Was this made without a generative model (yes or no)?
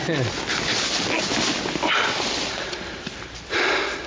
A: yes